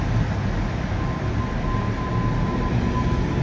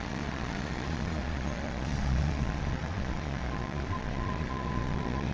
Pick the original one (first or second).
first